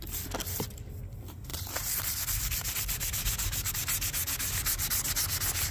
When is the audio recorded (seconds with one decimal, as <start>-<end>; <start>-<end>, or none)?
0.0-1.5; 3.7-5.7